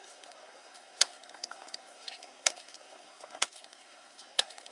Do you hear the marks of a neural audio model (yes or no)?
yes